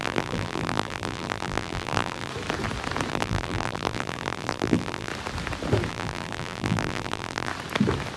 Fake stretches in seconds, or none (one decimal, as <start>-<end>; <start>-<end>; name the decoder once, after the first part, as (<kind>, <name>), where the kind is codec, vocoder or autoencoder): 0.0-2.3 (vocoder, BigVGAN v2); 3.1-5.1; 5.9-7.5